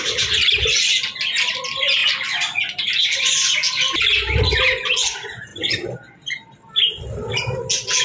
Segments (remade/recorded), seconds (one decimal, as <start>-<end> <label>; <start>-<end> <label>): 0.0-8.0 recorded